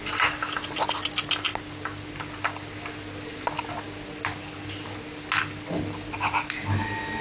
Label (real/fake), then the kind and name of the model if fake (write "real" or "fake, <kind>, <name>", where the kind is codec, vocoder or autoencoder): real